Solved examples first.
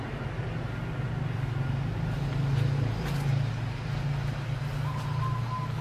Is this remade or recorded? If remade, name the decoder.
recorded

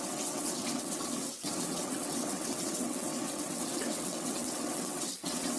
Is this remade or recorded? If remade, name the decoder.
remade, vocoder, WaveNeXt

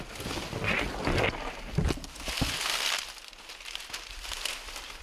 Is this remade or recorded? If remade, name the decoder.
recorded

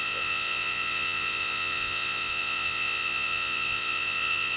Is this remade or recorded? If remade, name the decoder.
remade, vocoder, Vocos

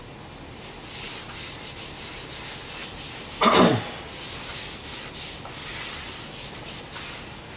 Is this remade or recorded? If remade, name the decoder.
recorded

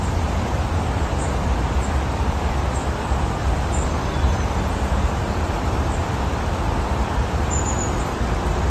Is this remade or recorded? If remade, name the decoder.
remade, vocoder, BigVGAN v2